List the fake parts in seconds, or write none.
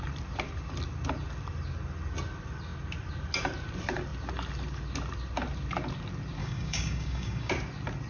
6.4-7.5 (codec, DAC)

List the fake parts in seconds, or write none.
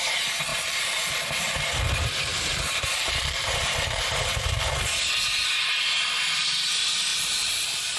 0.5-1.7 (vocoder, BigVGAN v2); 2.3-4.8; 7.1-8.0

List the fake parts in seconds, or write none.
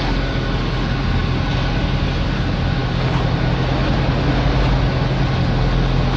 none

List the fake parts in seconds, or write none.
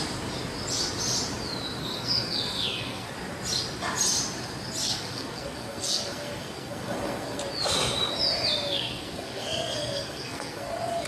1.8-3.1 (codec, SNAC); 4.8-7.4; 8.7-10.7